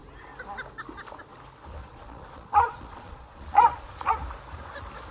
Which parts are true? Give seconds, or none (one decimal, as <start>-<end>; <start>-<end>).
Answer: 0.0-1.8; 4.1-5.1